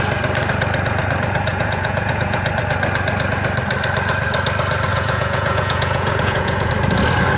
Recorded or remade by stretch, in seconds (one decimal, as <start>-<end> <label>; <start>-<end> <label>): 0.0-1.5 recorded; 1.5-2.5 remade; 2.5-4.9 recorded; 4.9-6.7 remade; 6.7-7.4 recorded